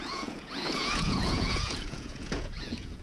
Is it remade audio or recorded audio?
remade